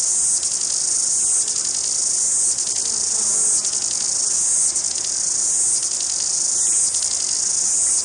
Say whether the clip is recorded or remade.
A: recorded